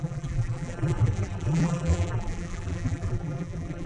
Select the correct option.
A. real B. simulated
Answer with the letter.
B